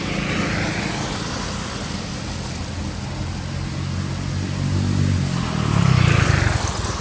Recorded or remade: recorded